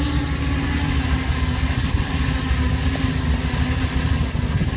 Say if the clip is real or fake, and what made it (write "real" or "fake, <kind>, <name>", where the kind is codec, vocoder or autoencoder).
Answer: real